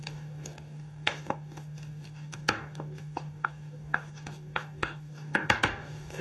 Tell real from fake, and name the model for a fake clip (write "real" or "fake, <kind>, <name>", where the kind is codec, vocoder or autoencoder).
fake, codec, DAC